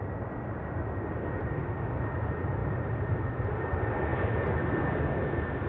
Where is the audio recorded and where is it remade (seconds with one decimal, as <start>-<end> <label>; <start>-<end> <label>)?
0.0-5.7 recorded